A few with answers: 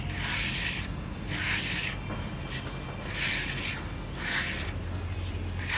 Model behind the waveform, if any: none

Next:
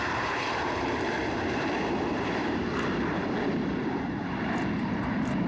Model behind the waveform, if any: vocoder, BigVGAN v2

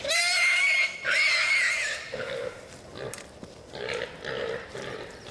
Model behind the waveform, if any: none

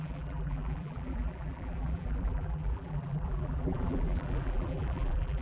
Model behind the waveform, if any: vocoder, BigVGAN v2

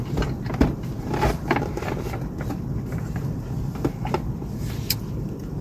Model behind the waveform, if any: vocoder, BigVGAN v2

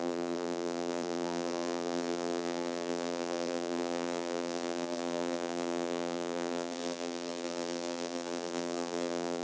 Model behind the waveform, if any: vocoder, BigVGAN v2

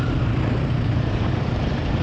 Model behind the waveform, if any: vocoder, BigVGAN v2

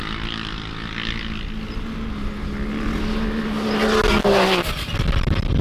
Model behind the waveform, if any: none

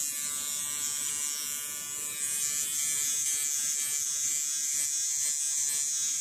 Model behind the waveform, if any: none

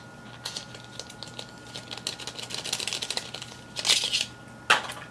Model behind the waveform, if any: none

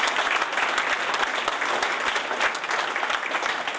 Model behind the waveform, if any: none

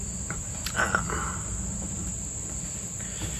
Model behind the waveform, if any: none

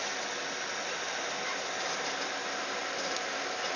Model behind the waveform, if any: vocoder, BigVGAN v2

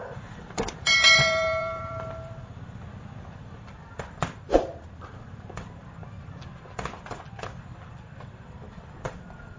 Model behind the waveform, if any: vocoder, BigVGAN v2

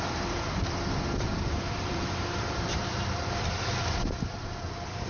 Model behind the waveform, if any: vocoder, BigVGAN v2